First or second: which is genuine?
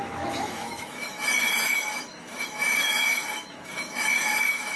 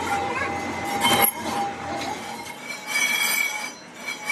second